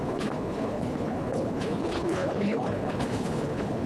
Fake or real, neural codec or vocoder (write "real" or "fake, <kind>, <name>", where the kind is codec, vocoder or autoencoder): fake, codec, HILCodec